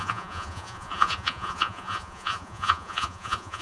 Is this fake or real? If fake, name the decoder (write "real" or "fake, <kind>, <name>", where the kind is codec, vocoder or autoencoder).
fake, vocoder, Vocos